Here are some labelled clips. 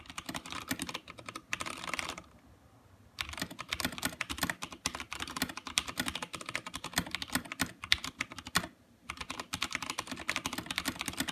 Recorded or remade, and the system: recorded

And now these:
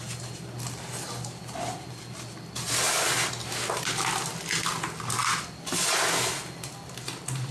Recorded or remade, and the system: recorded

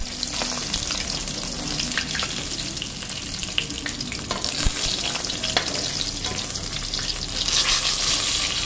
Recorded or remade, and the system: recorded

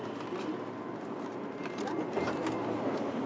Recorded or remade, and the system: recorded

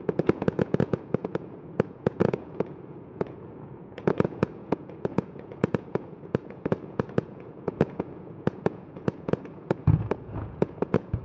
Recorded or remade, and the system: remade, vocoder, Vocos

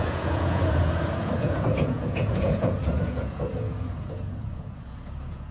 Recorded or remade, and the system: remade, vocoder, Vocos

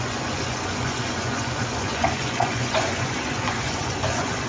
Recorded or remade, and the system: remade, vocoder, Vocos